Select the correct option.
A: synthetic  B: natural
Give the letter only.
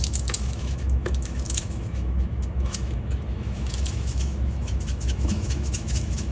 A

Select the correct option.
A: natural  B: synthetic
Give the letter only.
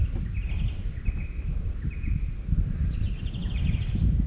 A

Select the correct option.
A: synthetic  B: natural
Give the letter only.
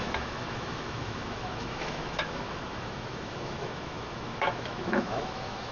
A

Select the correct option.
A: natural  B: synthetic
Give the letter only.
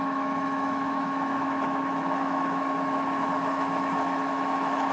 B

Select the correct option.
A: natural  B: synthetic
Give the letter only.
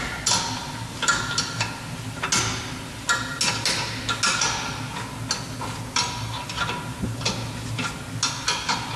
A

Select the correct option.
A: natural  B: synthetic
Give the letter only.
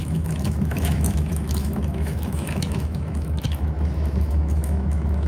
B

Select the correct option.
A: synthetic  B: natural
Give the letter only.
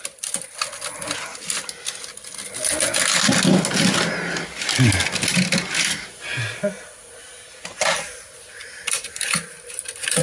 B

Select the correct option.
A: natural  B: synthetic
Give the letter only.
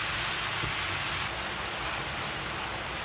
A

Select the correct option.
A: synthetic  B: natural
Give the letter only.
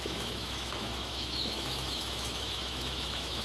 A